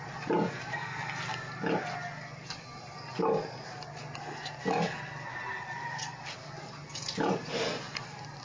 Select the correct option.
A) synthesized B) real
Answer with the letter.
B